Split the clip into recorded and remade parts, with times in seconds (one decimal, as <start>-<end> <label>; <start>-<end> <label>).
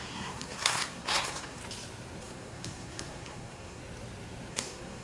0.0-1.6 remade; 1.6-2.2 recorded; 2.2-3.8 remade; 3.8-4.5 recorded; 4.5-5.0 remade